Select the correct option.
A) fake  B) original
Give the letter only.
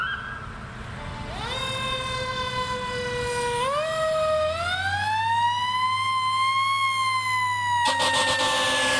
B